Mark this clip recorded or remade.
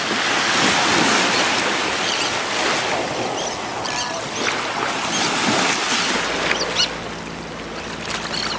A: recorded